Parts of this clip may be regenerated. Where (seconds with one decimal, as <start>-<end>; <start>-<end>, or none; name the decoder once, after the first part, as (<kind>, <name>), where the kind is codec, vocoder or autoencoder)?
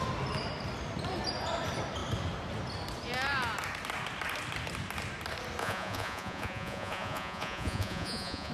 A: 5.6-8.5 (vocoder, Vocos)